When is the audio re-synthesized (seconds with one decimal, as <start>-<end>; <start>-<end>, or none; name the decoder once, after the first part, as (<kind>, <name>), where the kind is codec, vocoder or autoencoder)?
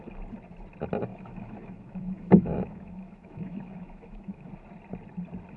1.1-4.5 (autoencoder, DAC-VAE)